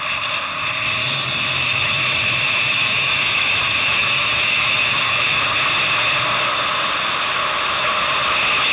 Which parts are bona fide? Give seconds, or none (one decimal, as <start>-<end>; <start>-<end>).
0.0-1.0; 5.4-8.7